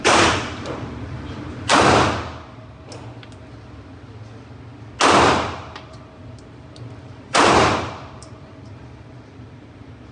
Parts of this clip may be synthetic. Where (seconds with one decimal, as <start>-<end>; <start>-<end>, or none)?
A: 0.0-1.7; 5.3-10.1